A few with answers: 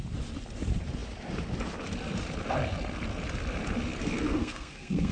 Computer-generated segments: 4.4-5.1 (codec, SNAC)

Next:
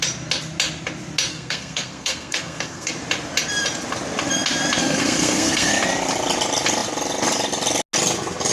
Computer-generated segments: 1.3-2.9 (codec, SNAC); 4.8-5.7

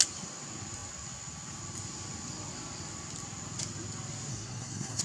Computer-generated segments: 4.3-5.0 (codec, SNAC)

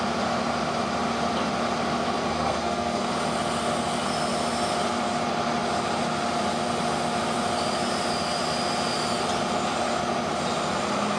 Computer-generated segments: 2.3-3.1 (codec, SNAC)

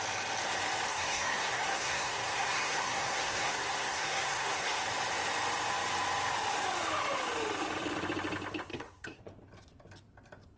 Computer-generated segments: 0.9-4.8 (codec, SNAC); 8.7-9.2

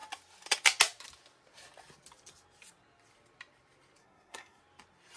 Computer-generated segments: 4.0-4.6 (codec, SNAC)

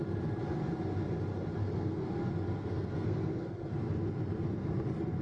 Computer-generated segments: 1.6-2.1 (codec, SNAC); 2.5-3.6

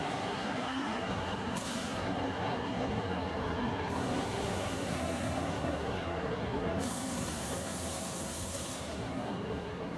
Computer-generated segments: 0.0-10.0 (codec, SNAC)